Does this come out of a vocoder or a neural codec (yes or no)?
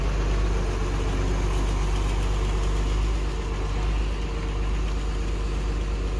no